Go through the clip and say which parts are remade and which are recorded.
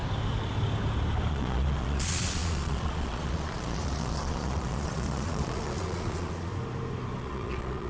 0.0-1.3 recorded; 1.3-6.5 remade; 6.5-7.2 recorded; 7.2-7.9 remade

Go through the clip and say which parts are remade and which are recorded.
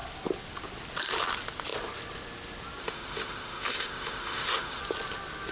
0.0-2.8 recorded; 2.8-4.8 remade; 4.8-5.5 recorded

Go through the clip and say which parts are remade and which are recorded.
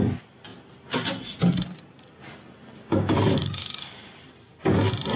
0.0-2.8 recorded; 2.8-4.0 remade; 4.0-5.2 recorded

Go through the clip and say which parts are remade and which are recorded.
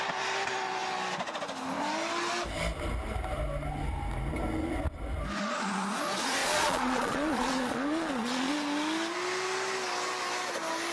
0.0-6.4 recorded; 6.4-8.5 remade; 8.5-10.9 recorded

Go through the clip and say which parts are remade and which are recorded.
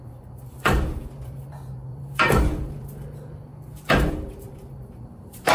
0.0-3.5 remade; 3.5-4.1 recorded; 4.1-5.5 remade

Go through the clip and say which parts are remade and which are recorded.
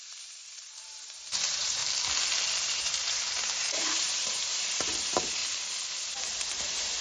0.0-1.8 remade; 1.8-2.6 recorded; 2.6-5.4 remade; 5.4-6.0 recorded; 6.0-7.0 remade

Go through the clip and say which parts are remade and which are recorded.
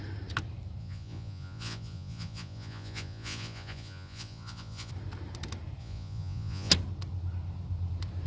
0.0-0.8 recorded; 0.8-4.9 remade; 4.9-5.8 recorded; 5.8-6.7 remade; 6.7-8.3 recorded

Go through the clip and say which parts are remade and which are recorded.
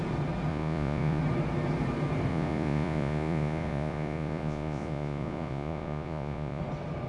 0.0-0.5 recorded; 0.5-1.2 remade; 1.2-2.3 recorded; 2.3-6.6 remade; 6.6-7.1 recorded